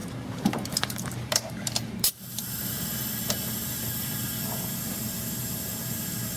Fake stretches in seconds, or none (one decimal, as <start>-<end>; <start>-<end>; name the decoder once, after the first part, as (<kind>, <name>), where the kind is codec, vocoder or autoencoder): 0.0-3.0 (vocoder, BigVGAN v2); 4.7-6.4